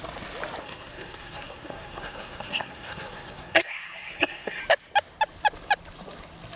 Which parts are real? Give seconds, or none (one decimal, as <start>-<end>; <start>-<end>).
0.0-0.6; 4.6-6.6